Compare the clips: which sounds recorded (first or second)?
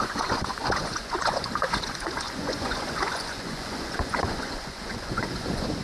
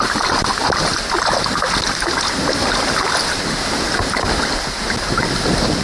second